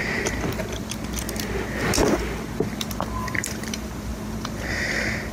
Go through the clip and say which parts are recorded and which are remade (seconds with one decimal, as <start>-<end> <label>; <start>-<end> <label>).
0.0-3.2 recorded; 3.2-5.3 remade